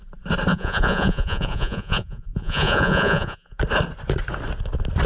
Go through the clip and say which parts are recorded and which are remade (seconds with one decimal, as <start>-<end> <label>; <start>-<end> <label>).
0.0-0.5 recorded; 0.5-3.6 remade; 3.6-5.1 recorded